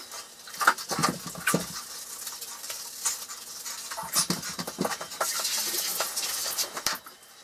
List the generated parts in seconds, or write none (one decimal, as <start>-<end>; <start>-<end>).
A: none